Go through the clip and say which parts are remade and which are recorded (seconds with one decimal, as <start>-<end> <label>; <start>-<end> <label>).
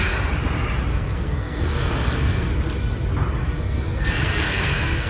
0.0-0.9 recorded; 0.9-2.5 remade; 2.5-3.4 recorded; 3.4-5.1 remade